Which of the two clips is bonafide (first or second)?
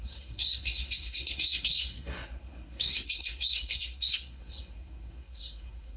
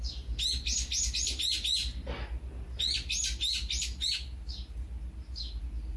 second